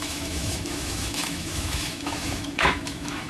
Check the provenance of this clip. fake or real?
fake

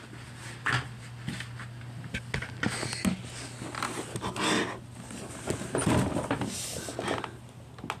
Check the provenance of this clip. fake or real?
real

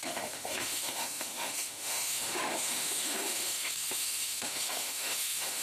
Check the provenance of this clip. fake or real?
fake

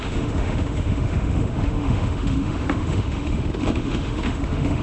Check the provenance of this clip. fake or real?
fake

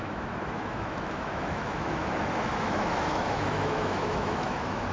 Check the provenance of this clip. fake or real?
fake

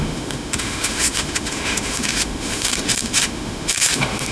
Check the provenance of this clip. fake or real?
fake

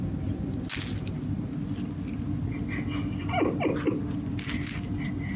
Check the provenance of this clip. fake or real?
real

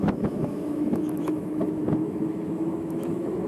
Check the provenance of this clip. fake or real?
fake